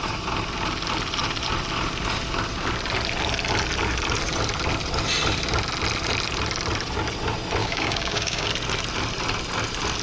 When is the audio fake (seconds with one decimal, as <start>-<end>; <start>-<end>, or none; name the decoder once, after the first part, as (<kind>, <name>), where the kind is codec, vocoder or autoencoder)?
7.6-8.5 (codec, DAC)

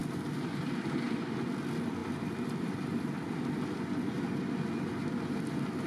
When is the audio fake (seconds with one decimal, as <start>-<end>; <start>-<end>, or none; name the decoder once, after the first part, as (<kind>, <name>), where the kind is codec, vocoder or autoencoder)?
none

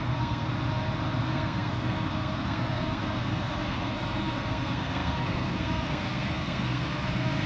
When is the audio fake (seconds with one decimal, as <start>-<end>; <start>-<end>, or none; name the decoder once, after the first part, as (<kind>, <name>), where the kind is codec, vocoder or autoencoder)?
0.0-0.5 (codec, SNAC); 1.2-7.5

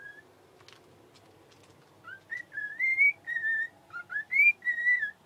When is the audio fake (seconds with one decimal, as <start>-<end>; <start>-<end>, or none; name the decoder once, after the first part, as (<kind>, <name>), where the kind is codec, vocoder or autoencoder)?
none

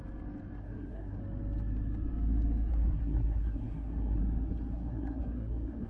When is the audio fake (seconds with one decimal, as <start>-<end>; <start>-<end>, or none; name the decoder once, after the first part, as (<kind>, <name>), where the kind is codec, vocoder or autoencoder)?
0.6-1.2 (codec, SNAC); 2.7-4.2; 4.7-5.9